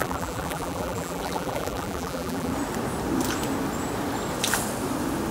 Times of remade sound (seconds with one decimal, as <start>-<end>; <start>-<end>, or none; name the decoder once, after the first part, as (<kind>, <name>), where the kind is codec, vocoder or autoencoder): 0.0-2.5 (vocoder, BigVGAN v2)